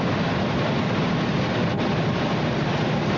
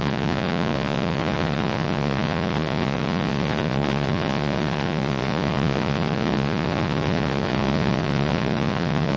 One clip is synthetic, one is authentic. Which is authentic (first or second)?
first